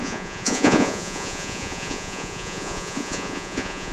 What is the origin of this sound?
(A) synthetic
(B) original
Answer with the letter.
A